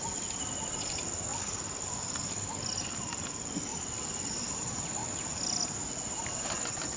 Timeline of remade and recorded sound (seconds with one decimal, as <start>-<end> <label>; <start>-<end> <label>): 0.0-7.0 recorded

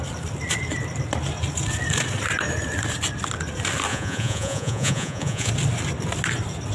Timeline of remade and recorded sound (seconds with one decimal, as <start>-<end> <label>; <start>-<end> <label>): 0.0-3.9 recorded; 3.9-5.5 remade; 5.5-6.7 recorded

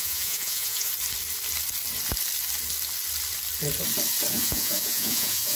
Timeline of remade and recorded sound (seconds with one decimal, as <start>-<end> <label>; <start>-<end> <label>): 0.0-0.9 remade; 0.9-4.3 recorded; 4.3-5.6 remade

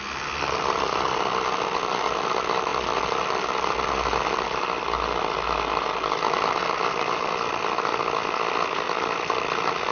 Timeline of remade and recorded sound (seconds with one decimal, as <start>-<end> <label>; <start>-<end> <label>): 0.0-9.9 recorded

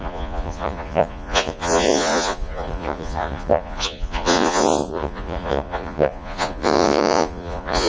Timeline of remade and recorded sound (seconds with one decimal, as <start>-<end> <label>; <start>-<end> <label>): 0.0-7.9 remade

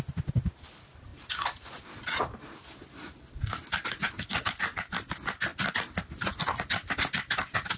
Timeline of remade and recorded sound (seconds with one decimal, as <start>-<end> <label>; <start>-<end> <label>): 0.0-7.8 recorded

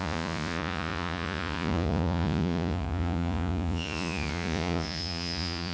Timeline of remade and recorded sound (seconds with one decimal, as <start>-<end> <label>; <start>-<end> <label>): 0.0-5.7 remade

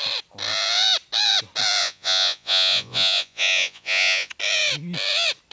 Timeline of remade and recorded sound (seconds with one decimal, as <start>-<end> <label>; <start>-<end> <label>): 0.0-1.8 recorded; 1.8-4.3 remade; 4.3-5.5 recorded